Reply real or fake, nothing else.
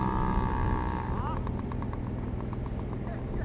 real